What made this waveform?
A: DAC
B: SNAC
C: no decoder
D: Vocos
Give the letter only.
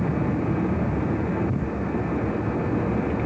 C